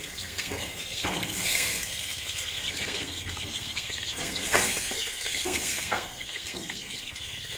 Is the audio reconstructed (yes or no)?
yes